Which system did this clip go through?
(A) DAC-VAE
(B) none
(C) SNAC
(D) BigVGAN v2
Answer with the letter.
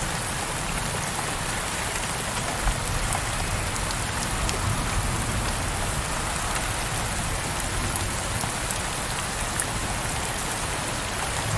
B